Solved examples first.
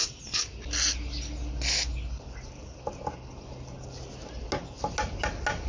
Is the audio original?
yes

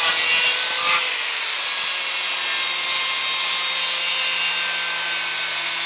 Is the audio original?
yes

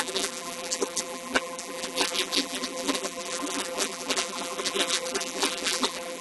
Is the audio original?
no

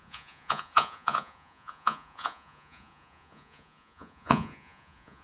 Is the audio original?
no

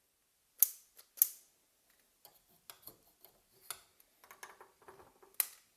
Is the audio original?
yes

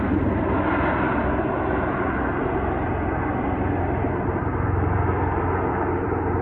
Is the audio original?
yes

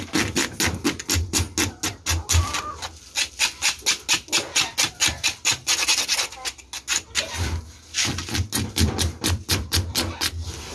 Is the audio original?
yes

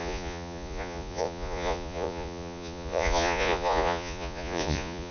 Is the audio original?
no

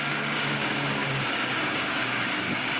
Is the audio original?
no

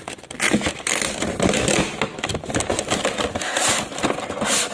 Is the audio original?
yes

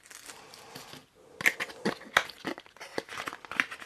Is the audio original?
yes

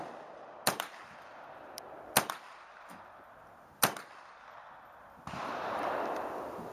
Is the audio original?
yes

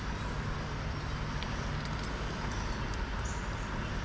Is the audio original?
yes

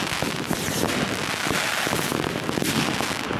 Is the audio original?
yes